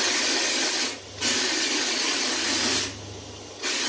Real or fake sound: real